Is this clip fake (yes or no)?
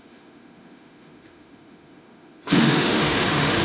yes